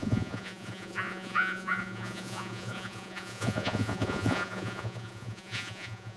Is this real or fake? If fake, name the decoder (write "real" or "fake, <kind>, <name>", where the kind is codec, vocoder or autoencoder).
fake, vocoder, Vocos